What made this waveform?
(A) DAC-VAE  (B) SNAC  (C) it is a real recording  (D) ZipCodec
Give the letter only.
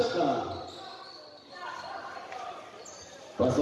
C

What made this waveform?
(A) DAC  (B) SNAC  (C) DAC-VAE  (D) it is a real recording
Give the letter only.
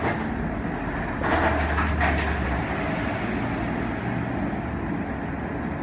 D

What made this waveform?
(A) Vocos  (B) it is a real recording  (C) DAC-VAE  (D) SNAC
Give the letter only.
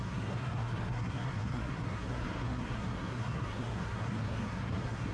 D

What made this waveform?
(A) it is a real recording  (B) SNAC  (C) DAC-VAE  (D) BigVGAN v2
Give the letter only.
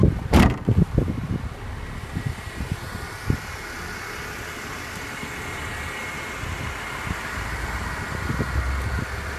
A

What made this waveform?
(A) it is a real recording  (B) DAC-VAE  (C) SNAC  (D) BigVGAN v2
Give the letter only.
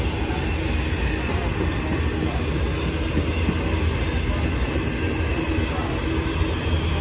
A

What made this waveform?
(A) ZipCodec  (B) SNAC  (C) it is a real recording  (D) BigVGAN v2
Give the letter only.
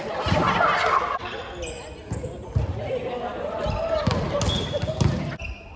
C